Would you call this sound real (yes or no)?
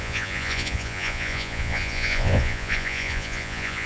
no